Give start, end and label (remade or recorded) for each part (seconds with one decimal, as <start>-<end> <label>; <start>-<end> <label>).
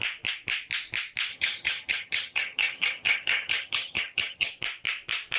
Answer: 0.0-1.3 recorded; 1.3-4.5 remade; 4.5-5.4 recorded